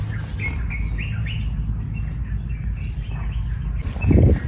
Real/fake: real